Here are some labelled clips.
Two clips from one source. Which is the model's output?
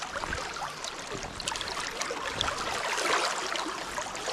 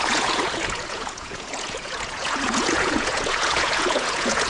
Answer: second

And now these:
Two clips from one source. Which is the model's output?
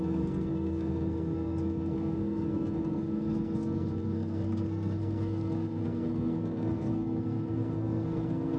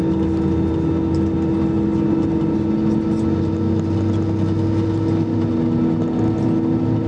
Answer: first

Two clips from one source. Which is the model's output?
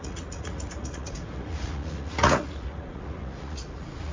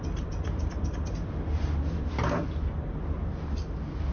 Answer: first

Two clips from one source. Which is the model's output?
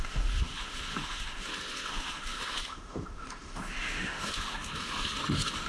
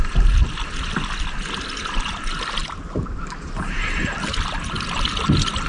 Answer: first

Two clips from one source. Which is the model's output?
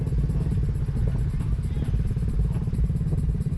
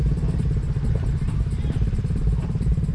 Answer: second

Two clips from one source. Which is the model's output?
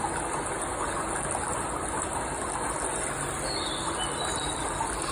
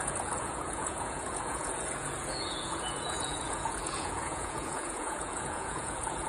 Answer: second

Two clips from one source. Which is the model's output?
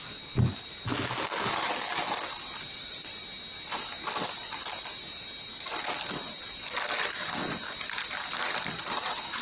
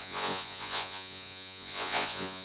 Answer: second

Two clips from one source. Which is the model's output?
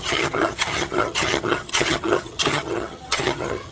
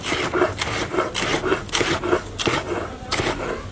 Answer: first